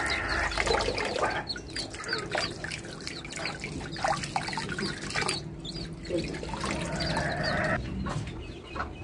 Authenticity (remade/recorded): recorded